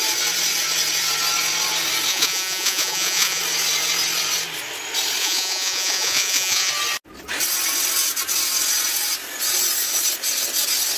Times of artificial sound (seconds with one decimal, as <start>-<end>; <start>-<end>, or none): 2.1-3.4; 5.2-6.7